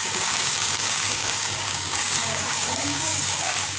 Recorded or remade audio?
remade